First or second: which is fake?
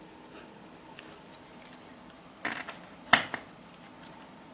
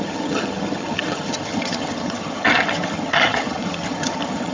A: second